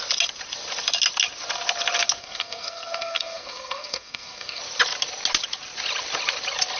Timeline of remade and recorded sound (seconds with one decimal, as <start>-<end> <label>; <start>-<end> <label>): 0.0-2.2 recorded; 2.2-4.6 remade; 4.6-6.8 recorded